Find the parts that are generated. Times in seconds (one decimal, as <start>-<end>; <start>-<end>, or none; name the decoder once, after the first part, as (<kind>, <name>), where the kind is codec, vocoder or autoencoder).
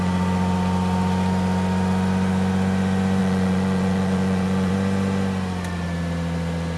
3.2-4.7 (vocoder, Vocos)